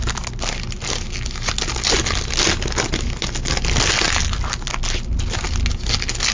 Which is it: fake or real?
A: real